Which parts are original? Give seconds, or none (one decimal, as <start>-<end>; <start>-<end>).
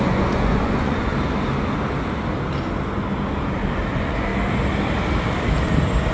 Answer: 1.1-3.9; 4.3-6.1